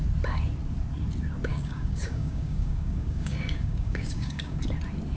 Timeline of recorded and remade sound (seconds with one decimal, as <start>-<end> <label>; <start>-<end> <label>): 0.0-1.5 recorded; 1.5-4.6 remade; 4.6-5.2 recorded